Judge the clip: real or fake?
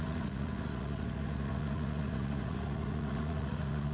fake